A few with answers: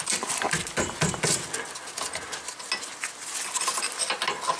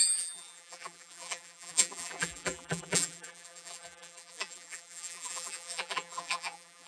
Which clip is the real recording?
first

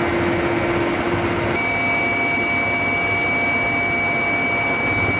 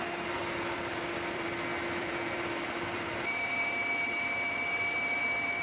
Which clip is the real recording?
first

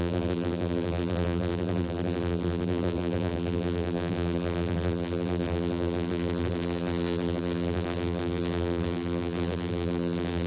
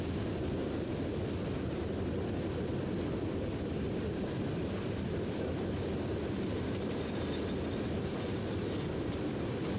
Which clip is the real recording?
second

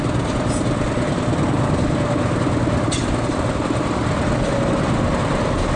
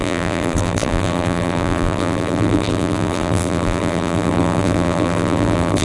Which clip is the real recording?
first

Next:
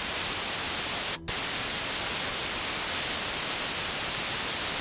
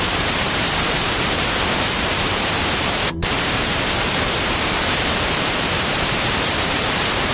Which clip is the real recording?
first